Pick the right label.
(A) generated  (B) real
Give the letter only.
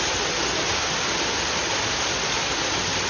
B